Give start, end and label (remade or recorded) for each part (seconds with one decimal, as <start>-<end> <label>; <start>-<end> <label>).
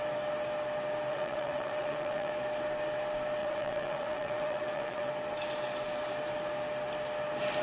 0.0-1.1 recorded; 1.1-2.3 remade; 2.3-3.4 recorded; 3.4-5.1 remade; 5.1-7.6 recorded